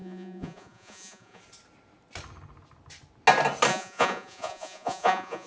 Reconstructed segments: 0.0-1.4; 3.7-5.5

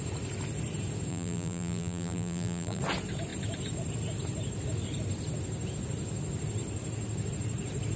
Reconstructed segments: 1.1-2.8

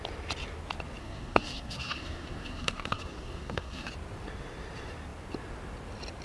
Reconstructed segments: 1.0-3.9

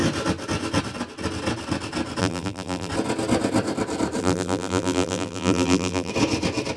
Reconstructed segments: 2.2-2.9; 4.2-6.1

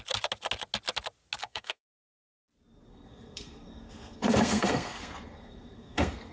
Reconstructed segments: 1.4-2.0; 2.9-6.3

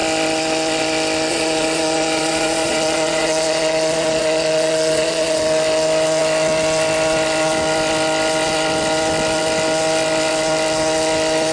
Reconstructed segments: 1.3-5.4

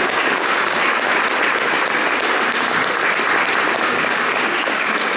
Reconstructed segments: 0.0-0.8; 3.8-5.2